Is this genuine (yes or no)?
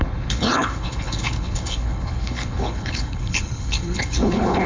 no